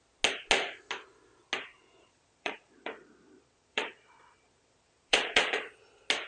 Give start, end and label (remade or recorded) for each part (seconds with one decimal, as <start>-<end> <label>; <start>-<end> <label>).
0.0-1.8 recorded; 1.8-5.6 remade; 5.6-6.3 recorded